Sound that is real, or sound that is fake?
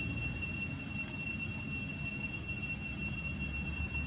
real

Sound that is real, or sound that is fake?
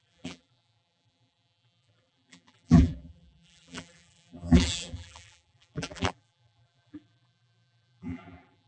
fake